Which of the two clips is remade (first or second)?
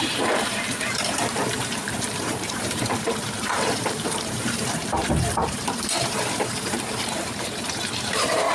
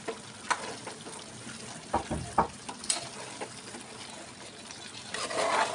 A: first